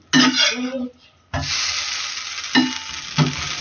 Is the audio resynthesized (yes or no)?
no